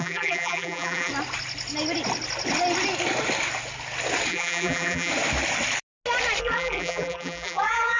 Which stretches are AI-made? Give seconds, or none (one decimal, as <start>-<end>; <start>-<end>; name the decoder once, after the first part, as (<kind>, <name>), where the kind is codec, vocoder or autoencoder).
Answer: 0.0-1.1 (vocoder, BigVGAN v2); 4.3-5.1; 6.4-8.0